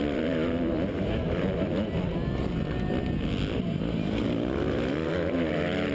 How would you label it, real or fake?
real